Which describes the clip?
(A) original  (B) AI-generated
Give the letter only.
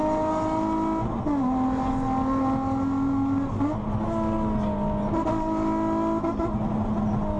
A